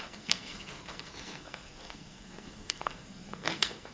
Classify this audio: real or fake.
fake